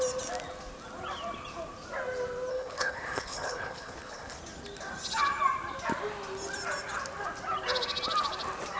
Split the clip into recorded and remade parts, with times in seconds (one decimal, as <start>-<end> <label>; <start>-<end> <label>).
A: 0.0-2.5 recorded; 2.5-4.4 remade; 4.4-8.8 recorded